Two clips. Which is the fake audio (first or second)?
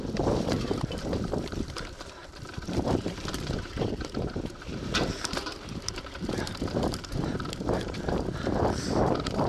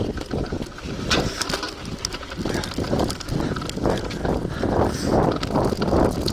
first